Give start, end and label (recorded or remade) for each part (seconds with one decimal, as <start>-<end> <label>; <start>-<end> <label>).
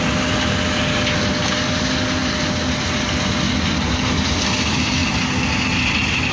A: 0.0-6.3 recorded